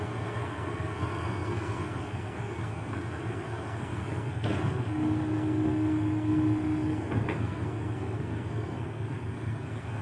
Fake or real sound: fake